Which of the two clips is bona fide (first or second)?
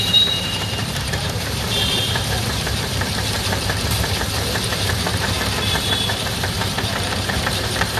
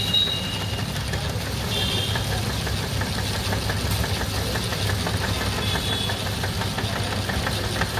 second